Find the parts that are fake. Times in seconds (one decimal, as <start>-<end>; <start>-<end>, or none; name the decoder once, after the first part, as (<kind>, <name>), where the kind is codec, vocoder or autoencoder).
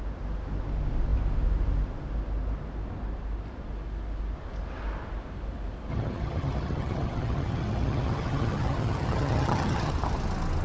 5.9-9.9 (vocoder, HiFi-GAN)